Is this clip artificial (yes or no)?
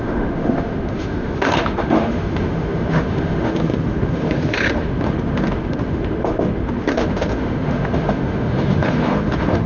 yes